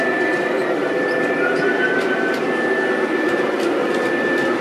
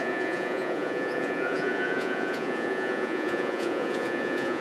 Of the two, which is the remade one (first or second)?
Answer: second